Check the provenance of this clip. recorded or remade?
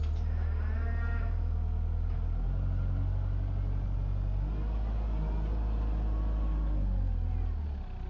recorded